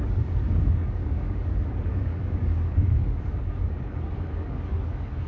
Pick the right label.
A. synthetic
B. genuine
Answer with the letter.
A